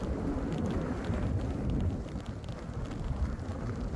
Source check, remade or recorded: recorded